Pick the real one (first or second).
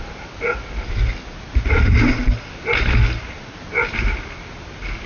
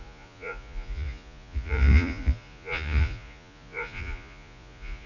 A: first